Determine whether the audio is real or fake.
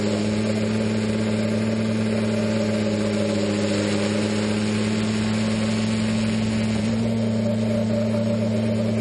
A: real